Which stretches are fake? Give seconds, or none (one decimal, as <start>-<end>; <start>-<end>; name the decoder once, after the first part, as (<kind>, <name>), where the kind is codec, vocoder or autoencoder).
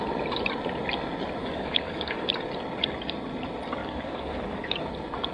1.4-2.3 (codec, DAC); 3.8-4.8